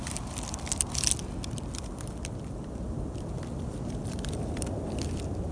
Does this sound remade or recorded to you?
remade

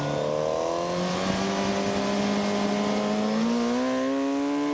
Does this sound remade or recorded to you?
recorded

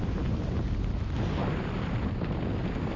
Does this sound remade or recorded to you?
recorded